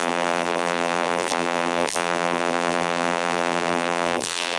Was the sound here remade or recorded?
remade